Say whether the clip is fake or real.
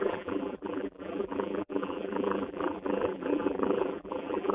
fake